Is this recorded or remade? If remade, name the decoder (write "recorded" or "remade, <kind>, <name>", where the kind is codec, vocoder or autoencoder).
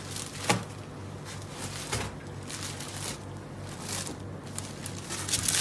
recorded